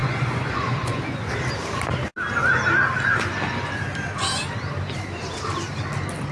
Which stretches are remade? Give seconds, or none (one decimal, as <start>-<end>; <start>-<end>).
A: 0.0-1.3